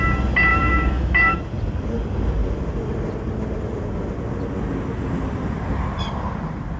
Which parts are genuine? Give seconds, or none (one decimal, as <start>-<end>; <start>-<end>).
0.0-0.5; 1.4-6.8